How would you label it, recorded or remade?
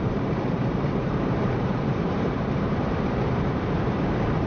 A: remade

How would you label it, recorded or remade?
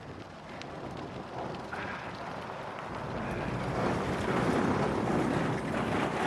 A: recorded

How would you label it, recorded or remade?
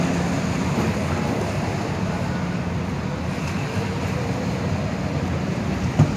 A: recorded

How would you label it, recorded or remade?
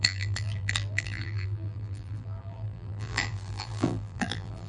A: remade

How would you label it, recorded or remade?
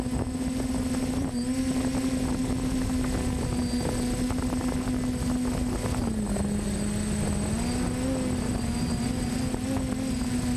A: recorded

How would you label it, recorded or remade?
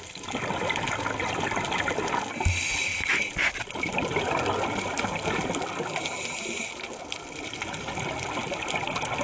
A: recorded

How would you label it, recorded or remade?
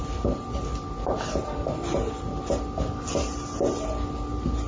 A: recorded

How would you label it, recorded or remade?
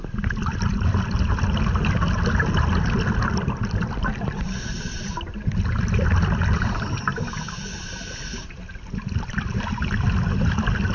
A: recorded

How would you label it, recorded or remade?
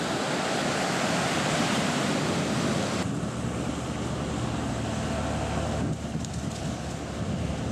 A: recorded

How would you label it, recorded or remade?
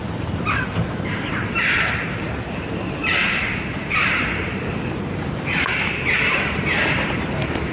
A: remade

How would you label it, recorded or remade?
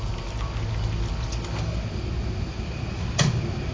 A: recorded